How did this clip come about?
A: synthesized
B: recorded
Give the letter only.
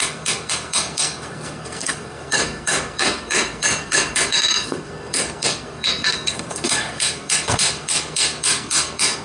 A